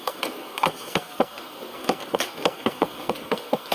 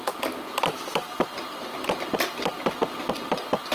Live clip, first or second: second